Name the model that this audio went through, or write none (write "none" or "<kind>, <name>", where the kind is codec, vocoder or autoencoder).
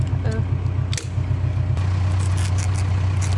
none